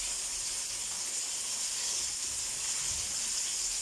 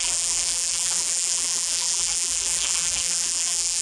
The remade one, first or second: second